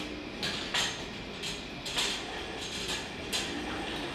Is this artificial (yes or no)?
no